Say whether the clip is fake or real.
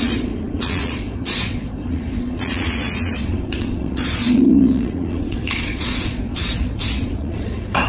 fake